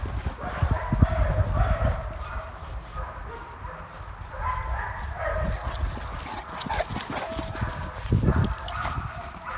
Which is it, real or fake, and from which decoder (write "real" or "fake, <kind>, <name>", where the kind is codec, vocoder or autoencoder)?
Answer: real